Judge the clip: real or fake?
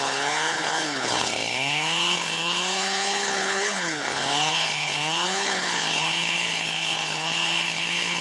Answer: fake